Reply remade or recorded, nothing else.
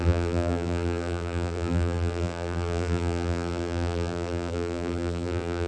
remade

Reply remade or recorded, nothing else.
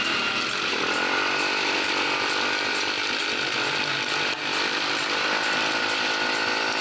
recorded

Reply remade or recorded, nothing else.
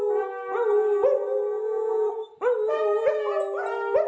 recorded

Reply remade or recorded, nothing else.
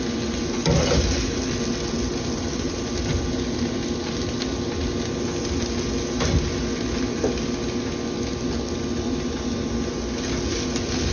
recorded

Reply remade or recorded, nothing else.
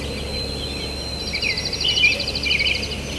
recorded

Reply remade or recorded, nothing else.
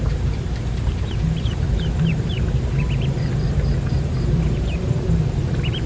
remade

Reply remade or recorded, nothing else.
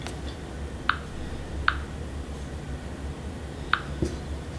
recorded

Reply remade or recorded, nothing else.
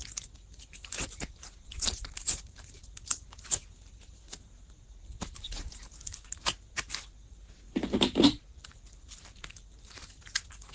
remade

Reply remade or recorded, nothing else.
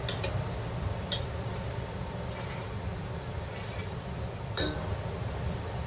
recorded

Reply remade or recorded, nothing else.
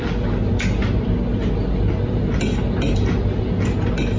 recorded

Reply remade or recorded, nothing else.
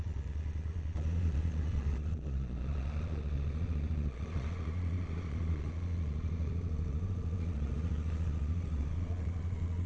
remade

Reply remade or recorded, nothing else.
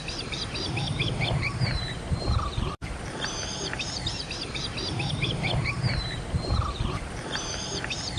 remade